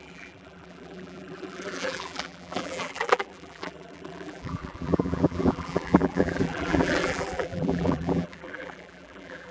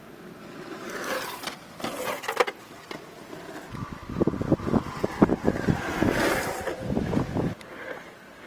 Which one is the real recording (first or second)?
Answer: second